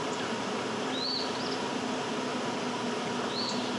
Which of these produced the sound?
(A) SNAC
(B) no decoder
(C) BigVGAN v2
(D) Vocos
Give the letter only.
B